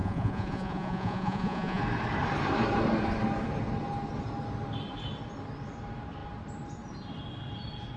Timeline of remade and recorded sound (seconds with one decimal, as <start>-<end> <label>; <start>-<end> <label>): 0.0-1.8 remade; 1.8-8.0 recorded